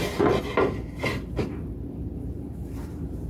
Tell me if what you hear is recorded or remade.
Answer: recorded